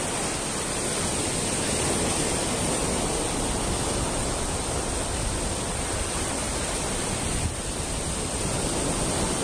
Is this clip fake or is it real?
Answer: real